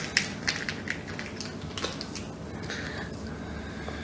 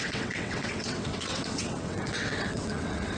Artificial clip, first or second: second